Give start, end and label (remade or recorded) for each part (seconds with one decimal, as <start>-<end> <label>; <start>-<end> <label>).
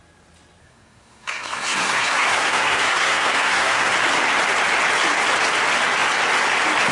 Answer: 0.0-0.6 recorded; 0.6-3.9 remade; 3.9-6.9 recorded